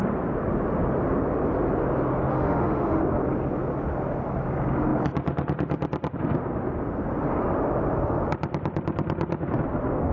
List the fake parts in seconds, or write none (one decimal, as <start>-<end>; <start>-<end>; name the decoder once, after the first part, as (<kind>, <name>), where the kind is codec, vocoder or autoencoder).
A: 2.3-3.0 (autoencoder, DAC-VAE)